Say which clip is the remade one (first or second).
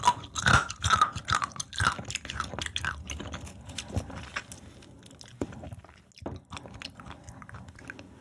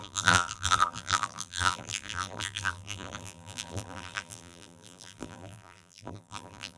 second